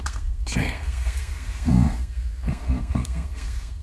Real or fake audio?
fake